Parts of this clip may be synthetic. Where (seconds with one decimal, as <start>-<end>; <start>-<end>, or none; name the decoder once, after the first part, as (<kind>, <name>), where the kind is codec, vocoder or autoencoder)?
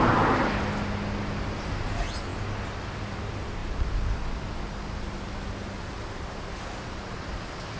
none